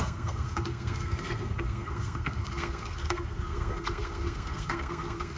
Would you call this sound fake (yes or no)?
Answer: yes